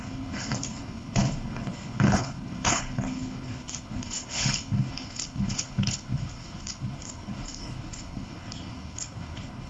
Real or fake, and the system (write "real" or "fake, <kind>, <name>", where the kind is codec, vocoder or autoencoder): fake, codec, HILCodec